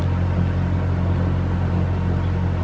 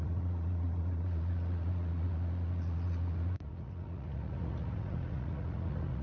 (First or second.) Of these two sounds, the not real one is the second